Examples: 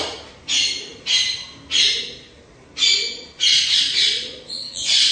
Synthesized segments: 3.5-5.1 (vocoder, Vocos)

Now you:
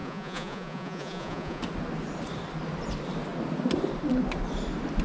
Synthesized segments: 0.0-1.6 (vocoder, Vocos)

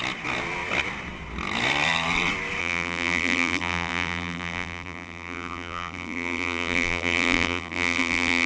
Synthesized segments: 2.6-8.5 (vocoder, BigVGAN v2)

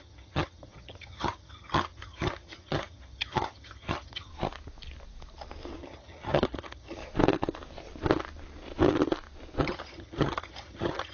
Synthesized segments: 0.0-4.3 (vocoder, HiFi-GAN); 5.8-7.0; 9.6-11.1

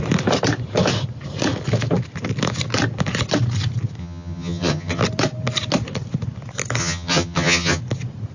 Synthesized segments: 4.0-5.0 (vocoder, HiFi-GAN); 6.8-7.8

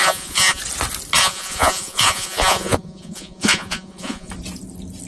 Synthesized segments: 0.0-0.6 (vocoder, Vocos); 1.2-4.3